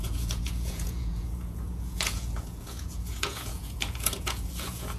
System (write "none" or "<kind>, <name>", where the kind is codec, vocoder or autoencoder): vocoder, Vocos